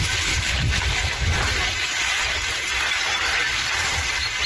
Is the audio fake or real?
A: real